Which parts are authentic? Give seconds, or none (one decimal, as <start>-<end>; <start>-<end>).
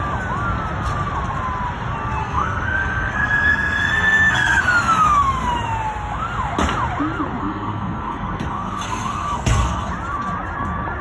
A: 0.0-2.2; 4.6-7.4; 9.9-11.0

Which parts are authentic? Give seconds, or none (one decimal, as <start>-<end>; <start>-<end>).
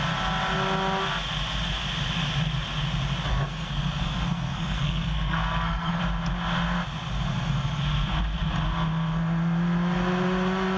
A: 0.0-3.3; 6.0-10.8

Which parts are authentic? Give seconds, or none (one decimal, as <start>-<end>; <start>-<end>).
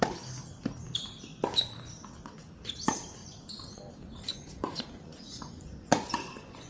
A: 0.0-3.2; 3.8-4.3